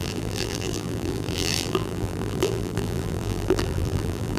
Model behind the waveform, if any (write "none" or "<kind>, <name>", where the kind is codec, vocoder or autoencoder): vocoder, BigVGAN v2